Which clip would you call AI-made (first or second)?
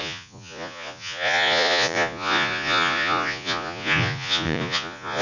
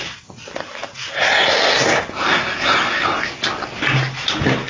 first